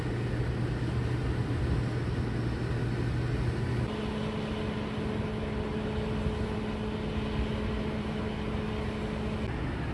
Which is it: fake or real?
real